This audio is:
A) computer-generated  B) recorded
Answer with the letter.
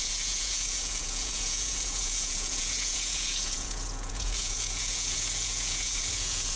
A